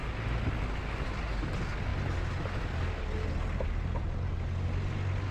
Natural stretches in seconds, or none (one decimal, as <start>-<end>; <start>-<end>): 0.0-5.3